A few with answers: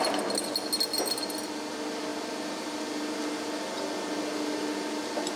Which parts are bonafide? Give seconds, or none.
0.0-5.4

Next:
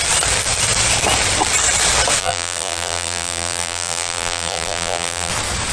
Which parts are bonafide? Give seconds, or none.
0.0-2.2; 5.3-5.7

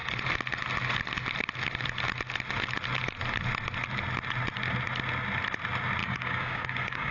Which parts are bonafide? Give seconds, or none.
0.0-6.0

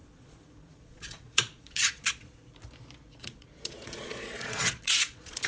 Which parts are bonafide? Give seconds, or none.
2.4-3.2

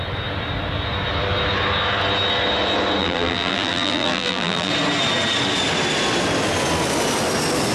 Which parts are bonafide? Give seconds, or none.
0.0-3.0; 4.7-7.7